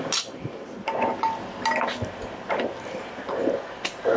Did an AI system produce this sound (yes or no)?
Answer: no